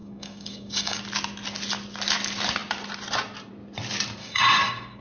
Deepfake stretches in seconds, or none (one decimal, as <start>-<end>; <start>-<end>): 0.0-1.0; 4.2-5.0